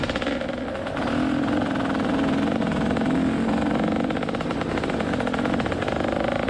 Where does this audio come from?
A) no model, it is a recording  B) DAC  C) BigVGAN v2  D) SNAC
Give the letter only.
A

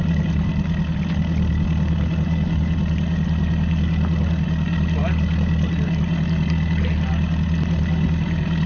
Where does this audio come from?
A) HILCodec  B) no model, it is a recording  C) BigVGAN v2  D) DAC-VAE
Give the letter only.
B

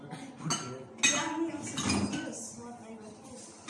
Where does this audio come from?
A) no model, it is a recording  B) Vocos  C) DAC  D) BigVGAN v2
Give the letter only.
A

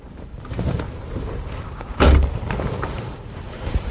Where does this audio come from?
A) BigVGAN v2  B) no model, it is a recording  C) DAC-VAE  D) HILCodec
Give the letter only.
A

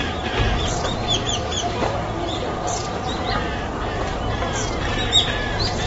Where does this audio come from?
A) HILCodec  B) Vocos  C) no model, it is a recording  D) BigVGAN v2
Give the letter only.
C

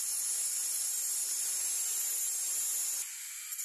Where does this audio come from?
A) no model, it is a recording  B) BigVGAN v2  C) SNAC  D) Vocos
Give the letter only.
A